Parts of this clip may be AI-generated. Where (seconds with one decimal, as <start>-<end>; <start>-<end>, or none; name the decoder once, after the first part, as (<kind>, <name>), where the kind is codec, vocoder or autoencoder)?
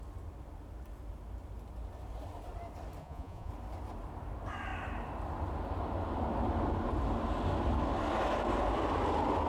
3.0-3.5 (vocoder, Vocos)